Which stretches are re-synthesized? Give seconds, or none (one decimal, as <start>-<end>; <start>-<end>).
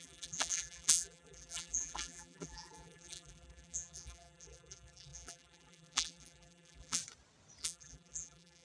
0.0-7.0; 7.6-8.6